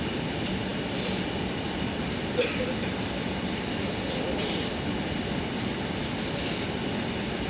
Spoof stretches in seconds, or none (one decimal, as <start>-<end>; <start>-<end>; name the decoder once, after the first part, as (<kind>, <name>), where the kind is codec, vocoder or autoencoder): none